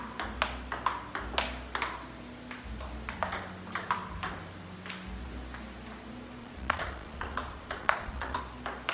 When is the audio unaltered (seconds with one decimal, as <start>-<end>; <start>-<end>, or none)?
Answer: 0.0-6.4; 8.4-8.9